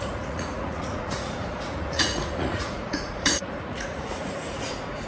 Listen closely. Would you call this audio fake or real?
fake